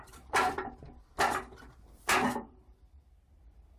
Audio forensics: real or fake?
real